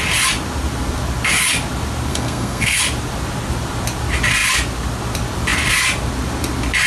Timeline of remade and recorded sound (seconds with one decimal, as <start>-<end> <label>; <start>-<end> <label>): 0.0-2.1 recorded; 2.1-2.8 remade; 2.8-6.9 recorded